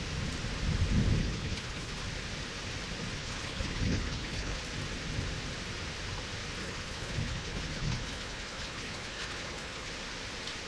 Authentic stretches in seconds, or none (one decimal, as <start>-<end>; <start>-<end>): 0.0-1.2; 2.0-3.2; 4.6-6.6; 9.9-10.7